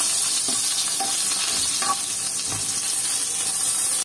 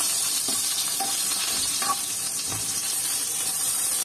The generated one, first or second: second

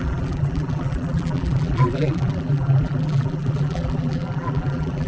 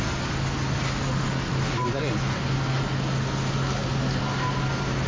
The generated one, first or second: first